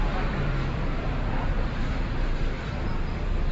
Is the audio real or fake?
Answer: fake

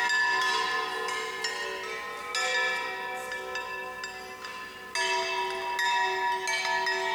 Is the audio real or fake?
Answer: real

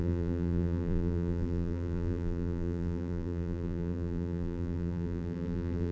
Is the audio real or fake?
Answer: fake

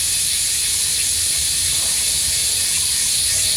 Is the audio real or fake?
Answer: fake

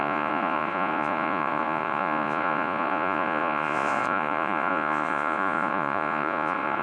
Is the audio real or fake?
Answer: fake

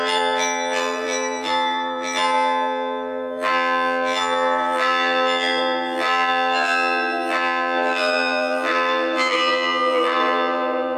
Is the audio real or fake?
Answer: fake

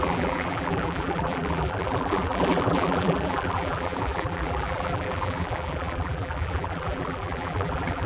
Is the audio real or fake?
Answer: fake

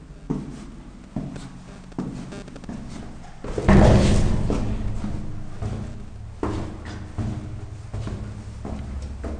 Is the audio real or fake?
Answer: real